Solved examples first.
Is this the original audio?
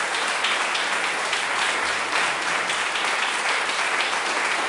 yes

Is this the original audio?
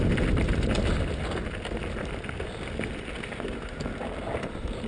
yes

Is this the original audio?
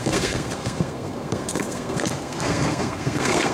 no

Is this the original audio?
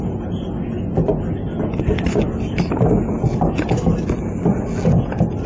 yes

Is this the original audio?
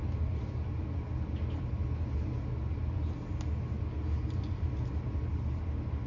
yes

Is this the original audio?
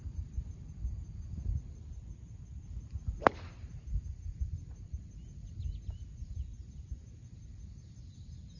yes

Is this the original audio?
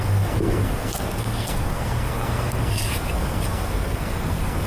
no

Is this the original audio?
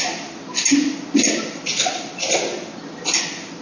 yes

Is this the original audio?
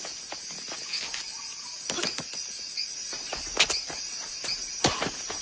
yes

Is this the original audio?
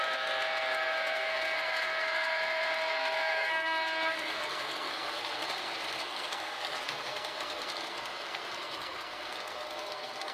no